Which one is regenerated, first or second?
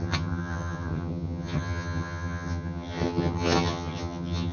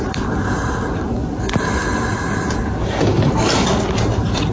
first